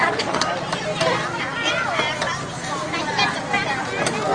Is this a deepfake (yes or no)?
no